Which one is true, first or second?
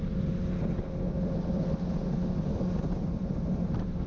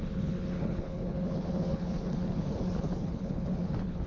first